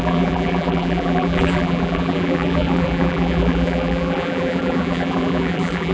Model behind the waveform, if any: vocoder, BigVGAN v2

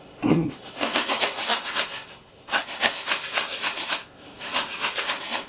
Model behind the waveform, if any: codec, SNAC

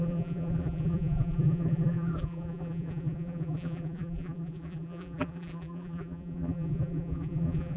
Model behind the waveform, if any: vocoder, BigVGAN v2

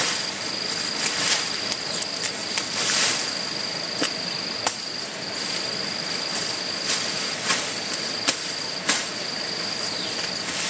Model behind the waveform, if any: none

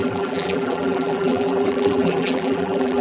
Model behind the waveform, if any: vocoder, BigVGAN v2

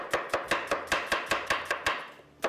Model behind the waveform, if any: none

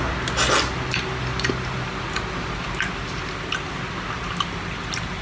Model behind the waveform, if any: none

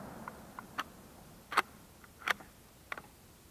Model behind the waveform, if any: none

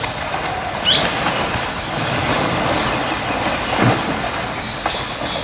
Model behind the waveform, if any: none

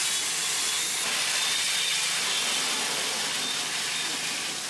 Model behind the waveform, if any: none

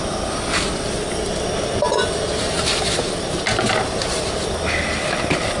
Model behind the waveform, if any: none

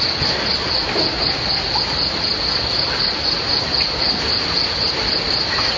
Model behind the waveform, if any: none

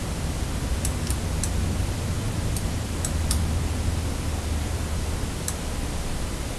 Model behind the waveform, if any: none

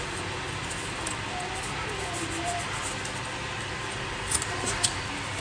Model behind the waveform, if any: none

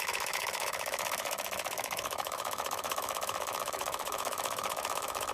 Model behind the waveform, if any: autoencoder, DAC-VAE